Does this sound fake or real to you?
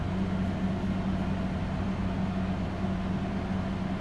real